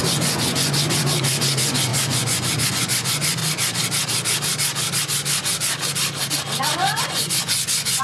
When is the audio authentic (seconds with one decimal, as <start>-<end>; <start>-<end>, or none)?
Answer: 3.4-7.0